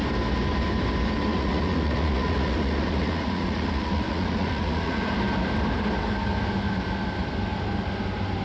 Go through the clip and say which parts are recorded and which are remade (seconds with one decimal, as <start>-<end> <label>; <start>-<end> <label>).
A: 0.0-1.3 recorded; 1.3-5.1 remade; 5.1-8.4 recorded